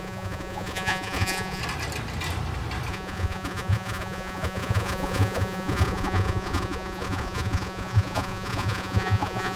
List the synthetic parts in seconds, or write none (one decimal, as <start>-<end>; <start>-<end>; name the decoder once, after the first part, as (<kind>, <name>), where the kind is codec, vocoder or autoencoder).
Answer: 0.0-1.6 (vocoder, Vocos); 2.9-9.6